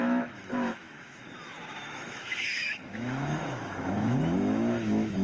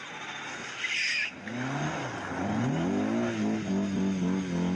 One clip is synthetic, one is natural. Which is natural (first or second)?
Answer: second